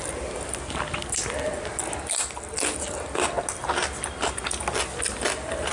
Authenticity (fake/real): real